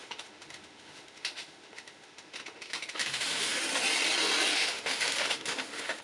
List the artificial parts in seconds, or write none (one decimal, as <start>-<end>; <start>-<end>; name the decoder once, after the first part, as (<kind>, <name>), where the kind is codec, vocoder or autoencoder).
0.0-3.6 (autoencoder, DAC-VAE); 4.5-6.0